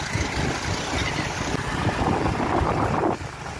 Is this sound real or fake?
real